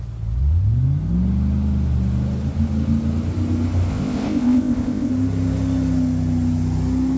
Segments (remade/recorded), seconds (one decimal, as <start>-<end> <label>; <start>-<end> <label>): 0.0-3.9 recorded; 3.9-5.1 remade; 5.1-7.2 recorded